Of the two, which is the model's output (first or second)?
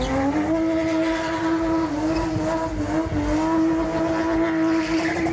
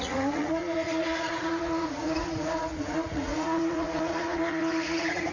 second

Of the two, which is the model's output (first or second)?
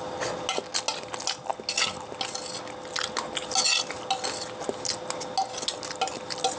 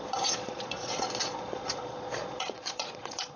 second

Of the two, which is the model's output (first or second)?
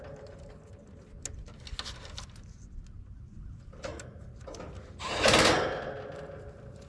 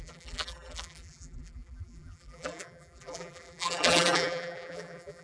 second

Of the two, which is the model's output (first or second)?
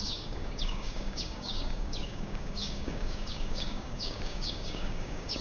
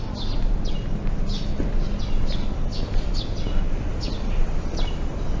first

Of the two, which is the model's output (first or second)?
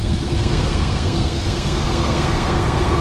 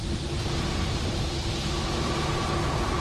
first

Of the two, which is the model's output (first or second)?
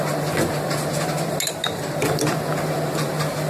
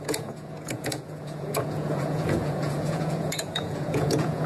second